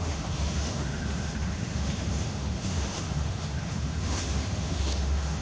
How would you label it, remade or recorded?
remade